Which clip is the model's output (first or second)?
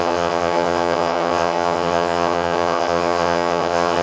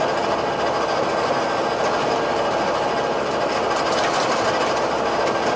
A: first